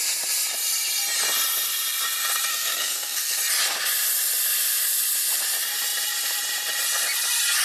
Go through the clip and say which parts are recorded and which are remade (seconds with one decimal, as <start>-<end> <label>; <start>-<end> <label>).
0.0-2.5 recorded; 2.5-3.4 remade; 3.4-7.6 recorded